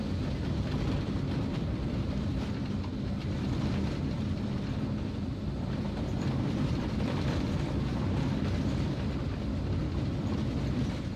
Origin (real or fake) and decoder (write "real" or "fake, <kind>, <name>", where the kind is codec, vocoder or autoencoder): real